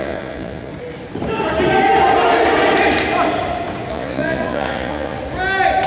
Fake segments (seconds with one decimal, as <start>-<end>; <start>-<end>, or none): 0.0-0.7; 3.9-5.2